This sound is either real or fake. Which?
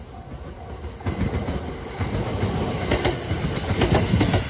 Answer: real